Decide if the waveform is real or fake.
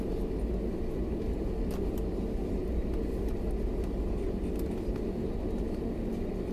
real